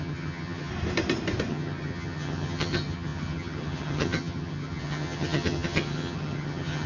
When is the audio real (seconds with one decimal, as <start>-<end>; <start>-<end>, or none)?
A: 0.7-1.5